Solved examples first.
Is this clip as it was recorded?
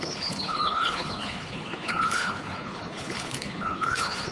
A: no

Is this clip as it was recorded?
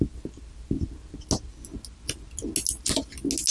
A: yes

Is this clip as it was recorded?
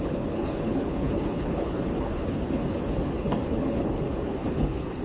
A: no